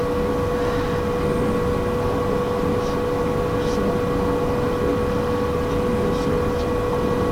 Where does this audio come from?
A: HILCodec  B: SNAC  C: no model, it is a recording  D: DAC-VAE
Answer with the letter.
C